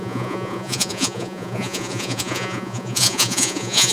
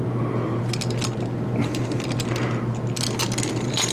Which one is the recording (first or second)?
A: second